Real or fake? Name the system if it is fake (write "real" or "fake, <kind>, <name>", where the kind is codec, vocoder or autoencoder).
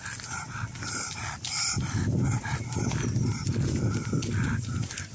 real